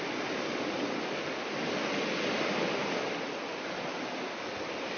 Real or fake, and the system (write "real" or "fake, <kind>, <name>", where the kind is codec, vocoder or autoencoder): real